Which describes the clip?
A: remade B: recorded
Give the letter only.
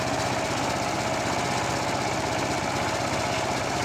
B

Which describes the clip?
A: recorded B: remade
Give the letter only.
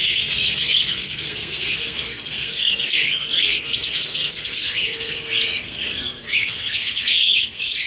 B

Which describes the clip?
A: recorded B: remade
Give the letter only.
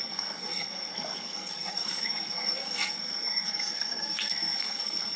B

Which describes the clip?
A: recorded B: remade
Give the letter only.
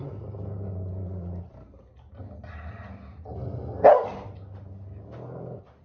A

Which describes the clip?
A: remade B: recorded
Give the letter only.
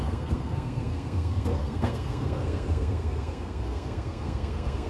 A